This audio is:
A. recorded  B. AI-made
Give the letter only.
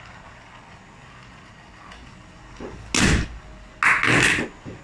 A